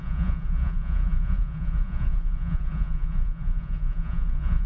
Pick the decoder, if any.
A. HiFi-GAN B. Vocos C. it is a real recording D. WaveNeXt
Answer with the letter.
B